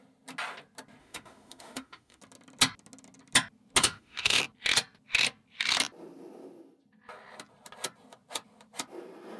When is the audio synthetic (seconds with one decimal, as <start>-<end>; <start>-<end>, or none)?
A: 1.0-2.2; 3.8-4.4